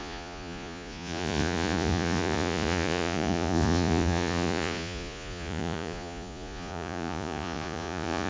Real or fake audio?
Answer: fake